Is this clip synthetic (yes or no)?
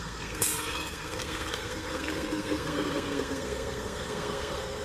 yes